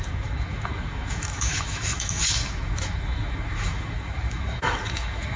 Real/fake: fake